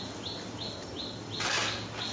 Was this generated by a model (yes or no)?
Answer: no